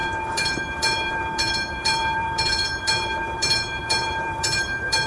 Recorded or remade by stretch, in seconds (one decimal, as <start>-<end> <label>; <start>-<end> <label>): 0.0-5.1 remade